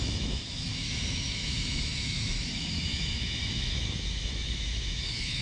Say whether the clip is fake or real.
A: fake